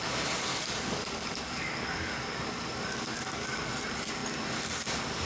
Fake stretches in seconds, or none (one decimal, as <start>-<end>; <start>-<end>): 0.5-3.7